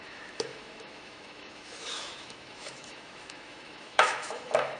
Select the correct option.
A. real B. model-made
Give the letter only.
B